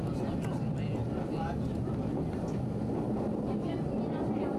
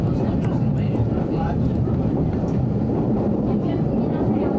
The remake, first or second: second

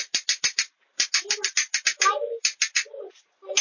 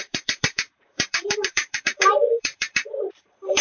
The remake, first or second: second